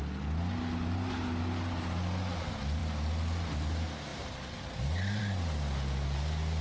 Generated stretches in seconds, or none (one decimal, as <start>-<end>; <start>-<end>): none